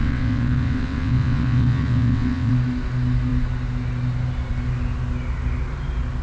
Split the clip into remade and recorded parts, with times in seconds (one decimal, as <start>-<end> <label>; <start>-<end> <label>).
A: 0.0-2.5 remade; 2.5-6.2 recorded